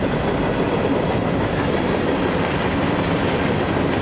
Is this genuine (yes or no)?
yes